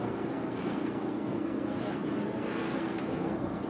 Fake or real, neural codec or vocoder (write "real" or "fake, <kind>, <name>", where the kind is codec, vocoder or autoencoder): fake, codec, SNAC